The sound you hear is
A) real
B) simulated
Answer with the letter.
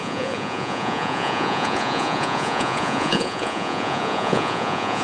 B